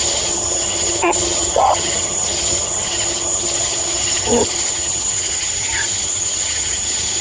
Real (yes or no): no